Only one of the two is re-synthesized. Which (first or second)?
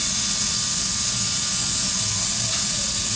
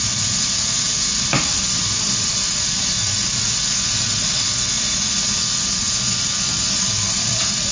second